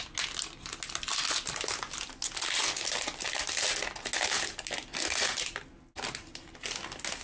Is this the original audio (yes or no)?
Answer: yes